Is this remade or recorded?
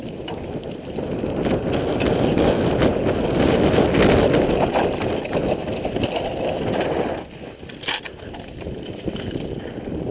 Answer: recorded